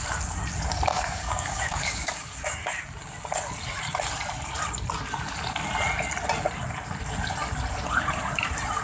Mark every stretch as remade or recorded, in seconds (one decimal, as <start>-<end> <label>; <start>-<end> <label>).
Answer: 0.0-0.9 recorded; 0.9-2.7 remade; 2.7-8.8 recorded